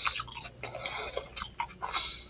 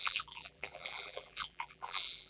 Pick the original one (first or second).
first